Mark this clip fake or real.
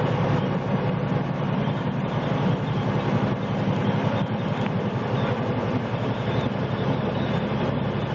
real